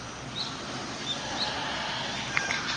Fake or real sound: real